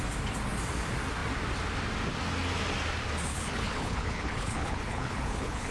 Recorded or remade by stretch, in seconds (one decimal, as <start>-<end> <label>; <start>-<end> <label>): 0.0-3.3 recorded; 3.3-5.7 remade